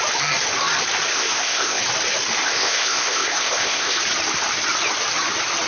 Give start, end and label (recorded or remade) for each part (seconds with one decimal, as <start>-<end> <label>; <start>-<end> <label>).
0.0-1.1 recorded; 1.1-1.8 remade; 1.8-2.4 recorded; 2.4-4.0 remade; 4.0-5.7 recorded